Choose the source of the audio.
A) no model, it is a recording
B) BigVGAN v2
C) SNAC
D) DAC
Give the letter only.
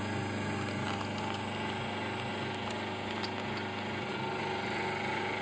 A